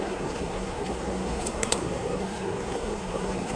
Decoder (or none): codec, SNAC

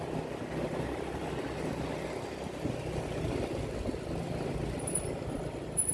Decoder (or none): none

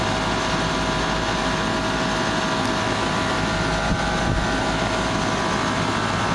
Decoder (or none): none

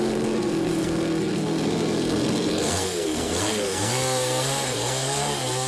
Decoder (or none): codec, SNAC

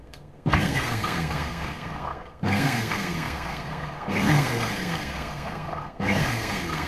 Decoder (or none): codec, SNAC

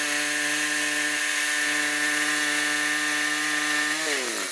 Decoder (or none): none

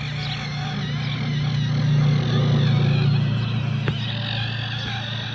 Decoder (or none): none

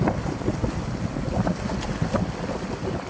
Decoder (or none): none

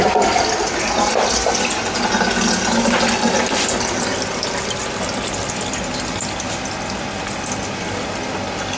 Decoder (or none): none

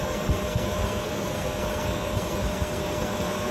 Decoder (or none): codec, SNAC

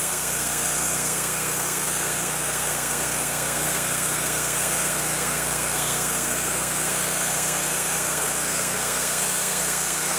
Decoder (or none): codec, SNAC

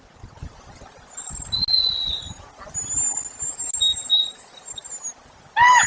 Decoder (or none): none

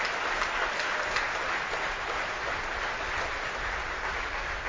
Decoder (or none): none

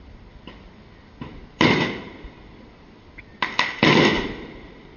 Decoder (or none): none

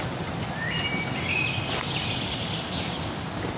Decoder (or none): none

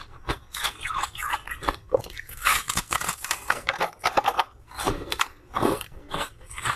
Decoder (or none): codec, SNAC